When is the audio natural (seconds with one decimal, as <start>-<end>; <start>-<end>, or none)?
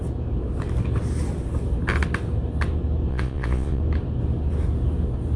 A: 0.0-3.1; 3.8-5.4